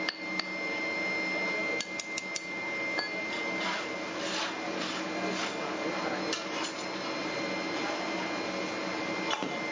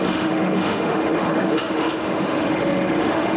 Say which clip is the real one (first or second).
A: first